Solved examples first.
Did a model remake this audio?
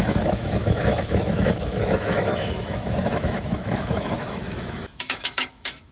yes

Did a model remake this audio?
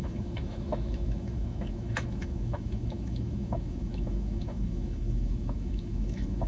yes